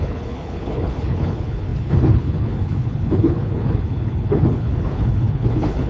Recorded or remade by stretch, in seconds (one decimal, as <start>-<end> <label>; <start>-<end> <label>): 0.0-5.9 remade